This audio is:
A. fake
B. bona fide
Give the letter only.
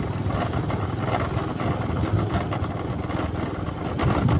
B